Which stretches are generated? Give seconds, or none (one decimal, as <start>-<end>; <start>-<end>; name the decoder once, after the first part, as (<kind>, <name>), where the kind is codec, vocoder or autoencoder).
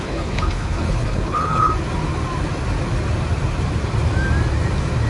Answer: 0.0-1.7 (codec, HILCodec)